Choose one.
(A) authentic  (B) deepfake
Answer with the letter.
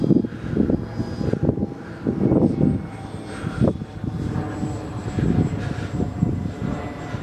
A